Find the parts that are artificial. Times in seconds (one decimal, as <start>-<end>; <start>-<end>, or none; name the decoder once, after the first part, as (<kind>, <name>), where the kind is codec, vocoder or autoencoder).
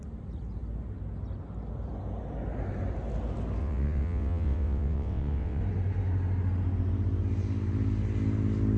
3.6-5.6 (vocoder, WaveNeXt)